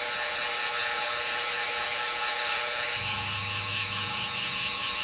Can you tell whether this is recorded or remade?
remade